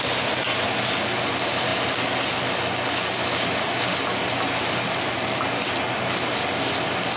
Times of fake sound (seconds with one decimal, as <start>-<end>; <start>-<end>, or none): none